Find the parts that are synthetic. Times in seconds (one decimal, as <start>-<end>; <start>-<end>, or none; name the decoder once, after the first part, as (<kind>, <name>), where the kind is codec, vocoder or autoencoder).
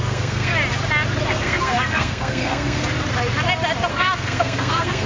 0.0-0.5 (codec, SNAC); 1.3-2.8; 3.9-5.1